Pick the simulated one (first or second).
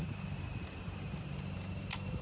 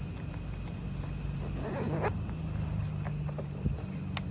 first